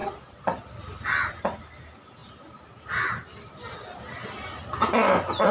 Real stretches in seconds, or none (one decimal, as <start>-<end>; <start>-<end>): 0.0-5.5